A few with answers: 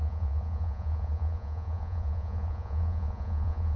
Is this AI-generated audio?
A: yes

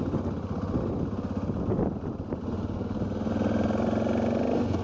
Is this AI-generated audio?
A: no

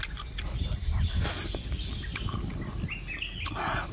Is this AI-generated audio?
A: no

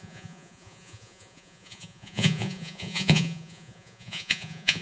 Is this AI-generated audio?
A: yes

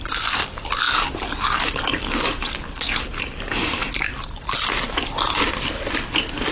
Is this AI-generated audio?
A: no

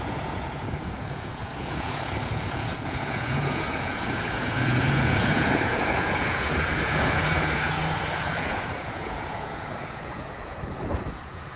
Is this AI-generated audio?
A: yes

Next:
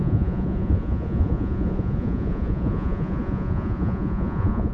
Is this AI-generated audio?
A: yes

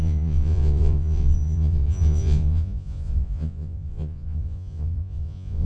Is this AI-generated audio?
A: yes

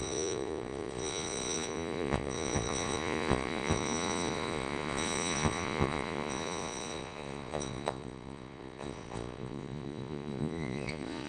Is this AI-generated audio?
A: yes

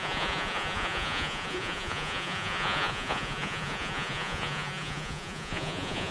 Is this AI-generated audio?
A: yes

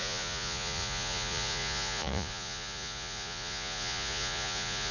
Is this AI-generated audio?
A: yes